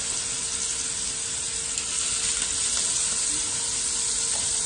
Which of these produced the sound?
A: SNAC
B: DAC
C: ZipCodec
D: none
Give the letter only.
D